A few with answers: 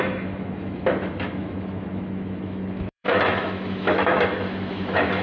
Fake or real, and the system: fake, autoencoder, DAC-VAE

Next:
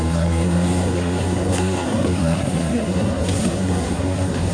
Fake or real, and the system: fake, codec, SNAC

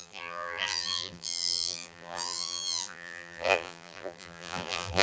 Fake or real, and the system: fake, vocoder, BigVGAN v2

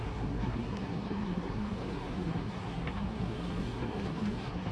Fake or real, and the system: fake, codec, SNAC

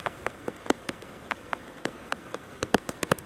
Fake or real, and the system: fake, codec, SNAC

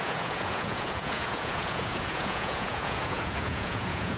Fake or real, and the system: fake, vocoder, Vocos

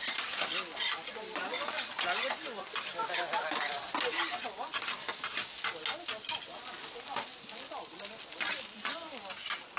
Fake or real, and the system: real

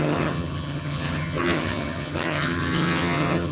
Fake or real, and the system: fake, vocoder, HiFi-GAN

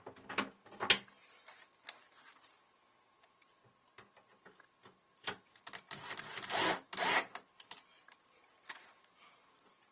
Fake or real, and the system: real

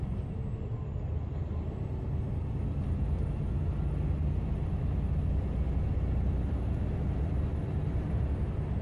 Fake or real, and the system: real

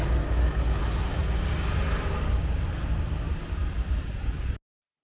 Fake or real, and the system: real